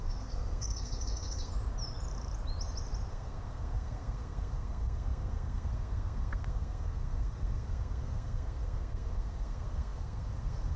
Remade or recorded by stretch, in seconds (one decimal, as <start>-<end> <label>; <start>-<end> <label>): 0.0-1.5 remade; 1.5-3.1 recorded; 3.1-10.8 remade